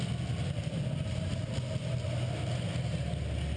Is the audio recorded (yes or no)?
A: yes